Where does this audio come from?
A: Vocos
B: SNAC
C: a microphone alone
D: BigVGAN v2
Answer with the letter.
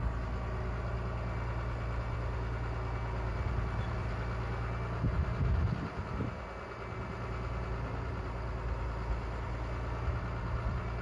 C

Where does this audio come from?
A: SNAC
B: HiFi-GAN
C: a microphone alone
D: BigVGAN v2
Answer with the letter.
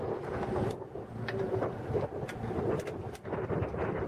C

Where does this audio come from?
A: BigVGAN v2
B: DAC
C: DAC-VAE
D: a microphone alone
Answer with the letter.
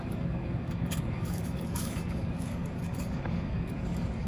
B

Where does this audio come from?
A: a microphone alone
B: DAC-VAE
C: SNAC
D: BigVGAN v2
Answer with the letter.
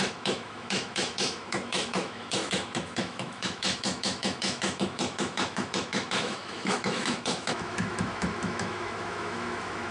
B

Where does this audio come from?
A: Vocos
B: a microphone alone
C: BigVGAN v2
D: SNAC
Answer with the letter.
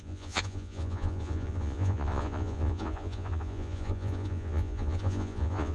A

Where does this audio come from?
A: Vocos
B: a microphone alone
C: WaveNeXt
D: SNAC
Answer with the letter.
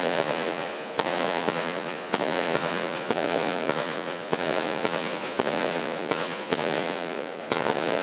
A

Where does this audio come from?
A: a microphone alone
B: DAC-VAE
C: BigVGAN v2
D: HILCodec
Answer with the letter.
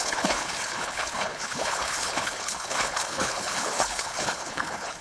D